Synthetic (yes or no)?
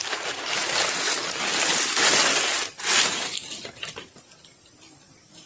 no